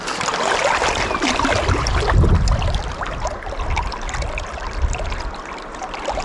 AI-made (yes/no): no